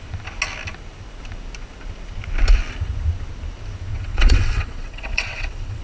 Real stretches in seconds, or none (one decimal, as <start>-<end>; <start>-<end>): 0.0-3.9